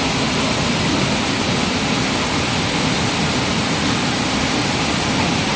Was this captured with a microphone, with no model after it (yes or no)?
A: yes